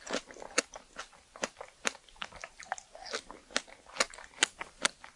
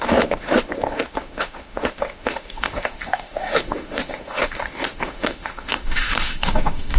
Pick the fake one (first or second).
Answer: second